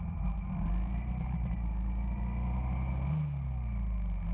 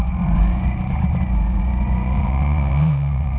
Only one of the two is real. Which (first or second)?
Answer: first